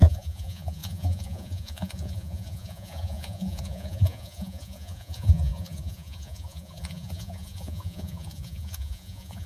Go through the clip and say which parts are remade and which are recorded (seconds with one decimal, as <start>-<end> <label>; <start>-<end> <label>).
0.0-9.5 remade